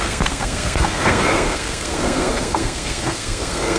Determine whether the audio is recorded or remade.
remade